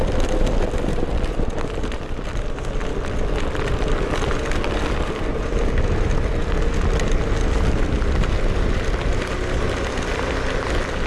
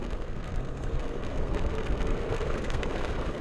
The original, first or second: first